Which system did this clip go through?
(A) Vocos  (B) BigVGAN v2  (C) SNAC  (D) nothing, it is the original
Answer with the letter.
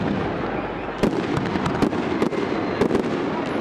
D